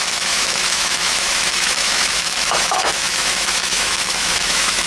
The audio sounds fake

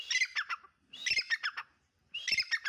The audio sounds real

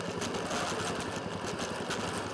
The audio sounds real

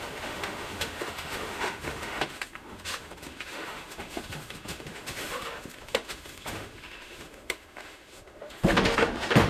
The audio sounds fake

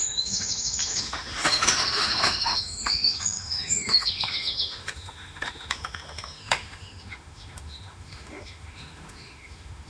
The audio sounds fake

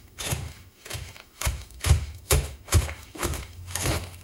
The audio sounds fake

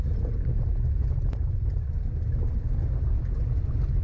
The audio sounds real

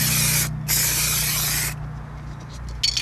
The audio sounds real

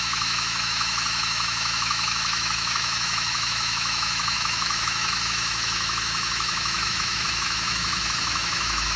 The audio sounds fake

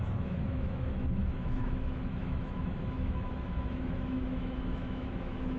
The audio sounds fake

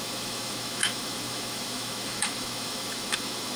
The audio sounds fake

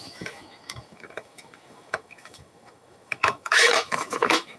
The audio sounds fake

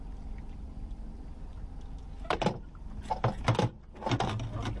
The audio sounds real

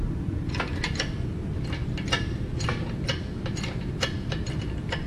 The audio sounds real